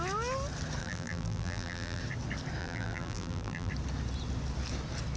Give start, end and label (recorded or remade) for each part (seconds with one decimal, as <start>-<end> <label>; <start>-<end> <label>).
0.0-0.8 recorded; 0.8-2.0 remade; 2.0-2.6 recorded; 2.6-3.7 remade; 3.7-5.2 recorded